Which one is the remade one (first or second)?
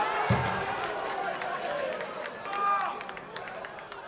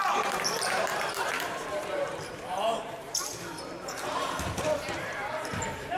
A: second